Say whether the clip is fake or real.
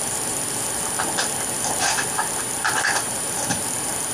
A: real